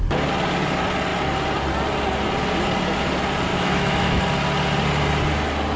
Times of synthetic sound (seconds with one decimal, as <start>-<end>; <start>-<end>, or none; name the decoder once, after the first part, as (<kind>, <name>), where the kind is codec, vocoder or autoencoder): 3.5-4.2 (autoencoder, DAC-VAE)

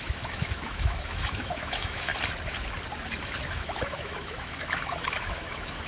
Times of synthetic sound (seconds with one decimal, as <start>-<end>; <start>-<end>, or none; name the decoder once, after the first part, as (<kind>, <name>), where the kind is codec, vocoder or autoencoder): 0.0-2.1 (autoencoder, DAC-VAE); 3.5-5.9

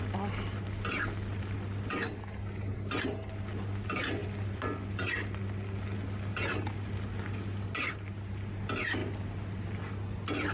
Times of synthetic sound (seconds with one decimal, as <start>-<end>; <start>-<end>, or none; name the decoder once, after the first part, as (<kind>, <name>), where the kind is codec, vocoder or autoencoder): none

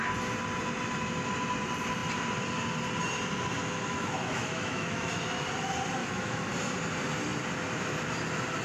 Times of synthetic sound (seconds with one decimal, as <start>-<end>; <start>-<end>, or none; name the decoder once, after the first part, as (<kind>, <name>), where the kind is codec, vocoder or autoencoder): 3.6-5.1 (autoencoder, DAC-VAE); 6.0-6.5

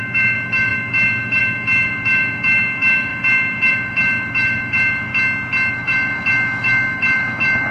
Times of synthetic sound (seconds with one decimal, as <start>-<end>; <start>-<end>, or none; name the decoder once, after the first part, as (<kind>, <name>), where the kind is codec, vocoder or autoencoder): 0.0-5.1 (autoencoder, DAC-VAE); 5.7-7.7

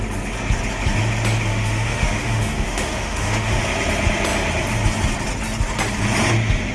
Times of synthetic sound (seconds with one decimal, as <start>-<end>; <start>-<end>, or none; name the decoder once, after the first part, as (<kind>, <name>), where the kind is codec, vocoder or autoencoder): 1.5-3.6 (autoencoder, DAC-VAE)

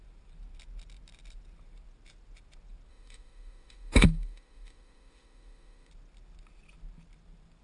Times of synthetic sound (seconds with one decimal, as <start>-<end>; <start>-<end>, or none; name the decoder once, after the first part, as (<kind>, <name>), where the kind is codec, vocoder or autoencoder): 2.9-5.9 (autoencoder, DAC-VAE)